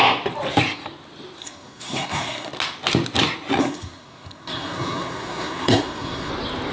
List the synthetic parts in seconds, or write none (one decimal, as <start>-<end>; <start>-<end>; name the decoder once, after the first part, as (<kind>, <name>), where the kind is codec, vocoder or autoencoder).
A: 1.4-2.5 (codec, SNAC); 3.6-6.3